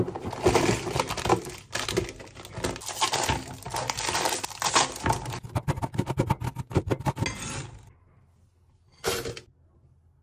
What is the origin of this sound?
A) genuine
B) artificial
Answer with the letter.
A